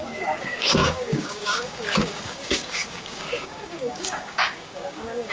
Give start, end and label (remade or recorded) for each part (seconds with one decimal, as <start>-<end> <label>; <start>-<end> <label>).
0.0-5.3 remade